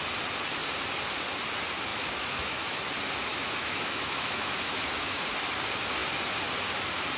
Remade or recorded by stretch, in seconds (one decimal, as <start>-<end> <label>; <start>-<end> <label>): 0.0-1.9 recorded; 1.9-2.8 remade; 2.8-3.3 recorded; 3.3-5.2 remade; 5.2-7.2 recorded

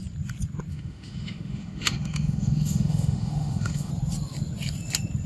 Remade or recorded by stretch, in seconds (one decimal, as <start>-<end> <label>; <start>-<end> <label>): 0.0-0.7 recorded; 0.7-3.9 remade; 3.9-5.3 recorded